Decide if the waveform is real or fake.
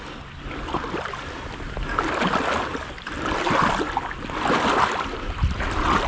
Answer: real